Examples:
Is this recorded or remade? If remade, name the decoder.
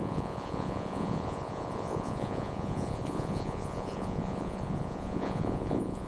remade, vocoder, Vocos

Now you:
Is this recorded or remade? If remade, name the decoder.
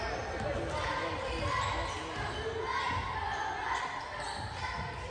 recorded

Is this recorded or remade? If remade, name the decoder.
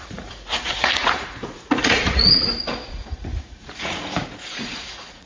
remade, vocoder, Vocos